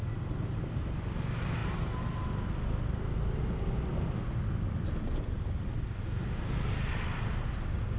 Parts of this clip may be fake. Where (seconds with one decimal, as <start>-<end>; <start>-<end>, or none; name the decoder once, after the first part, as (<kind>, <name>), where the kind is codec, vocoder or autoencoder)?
none